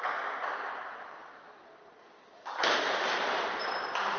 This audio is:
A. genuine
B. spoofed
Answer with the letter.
A